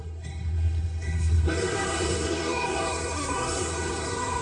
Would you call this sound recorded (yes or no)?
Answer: no